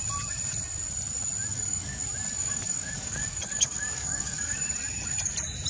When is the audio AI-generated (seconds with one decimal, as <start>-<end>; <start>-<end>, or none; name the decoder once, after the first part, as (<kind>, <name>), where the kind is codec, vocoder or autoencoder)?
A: 1.5-2.0 (codec, DAC); 2.4-4.6